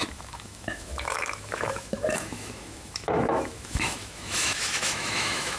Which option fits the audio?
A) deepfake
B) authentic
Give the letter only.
A